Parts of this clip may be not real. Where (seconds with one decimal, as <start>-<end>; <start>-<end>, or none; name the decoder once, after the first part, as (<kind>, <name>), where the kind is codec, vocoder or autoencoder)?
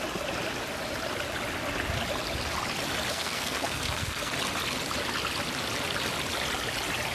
3.1-4.3 (codec, SNAC)